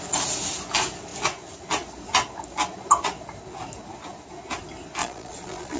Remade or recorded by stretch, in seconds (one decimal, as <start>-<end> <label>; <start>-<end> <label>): 0.0-5.0 recorded; 5.0-5.8 remade